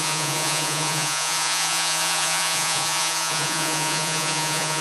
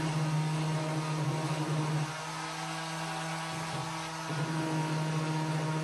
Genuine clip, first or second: second